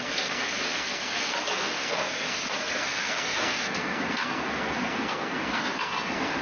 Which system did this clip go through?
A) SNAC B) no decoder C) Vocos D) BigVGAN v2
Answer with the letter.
A